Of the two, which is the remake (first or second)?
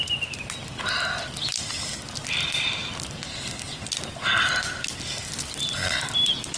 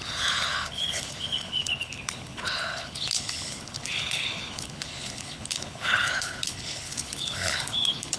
second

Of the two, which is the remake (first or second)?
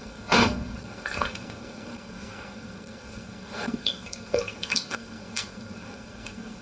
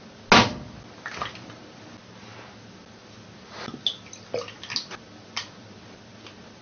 first